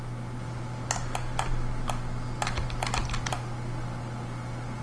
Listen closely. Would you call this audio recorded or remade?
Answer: recorded